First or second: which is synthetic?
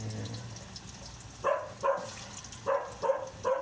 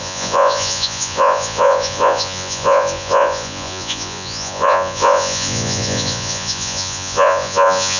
second